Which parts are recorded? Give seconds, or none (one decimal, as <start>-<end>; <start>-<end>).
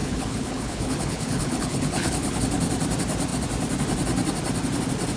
2.4-5.2